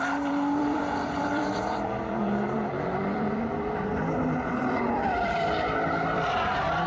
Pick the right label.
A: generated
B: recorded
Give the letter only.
A